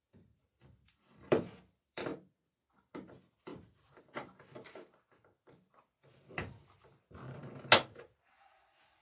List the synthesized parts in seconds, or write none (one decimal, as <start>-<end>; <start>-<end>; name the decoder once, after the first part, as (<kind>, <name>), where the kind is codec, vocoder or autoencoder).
0.0-2.1 (vocoder, BigVGAN v2); 3.1-7.4; 8.3-9.0